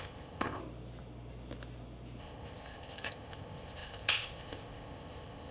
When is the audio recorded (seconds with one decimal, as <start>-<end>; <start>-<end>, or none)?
0.6-2.2